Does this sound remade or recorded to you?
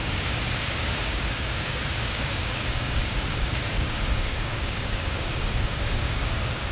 remade